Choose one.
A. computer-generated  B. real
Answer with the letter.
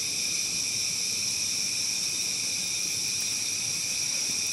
B